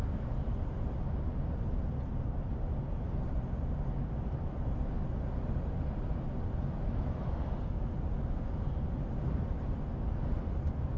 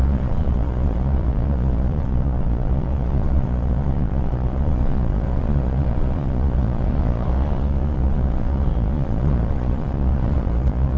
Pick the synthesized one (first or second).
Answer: second